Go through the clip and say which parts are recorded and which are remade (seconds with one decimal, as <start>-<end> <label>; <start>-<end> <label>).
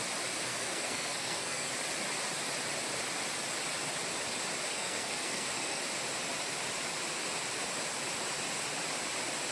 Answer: 0.0-0.5 recorded; 0.5-1.7 remade; 1.7-4.7 recorded; 4.7-5.8 remade; 5.8-9.5 recorded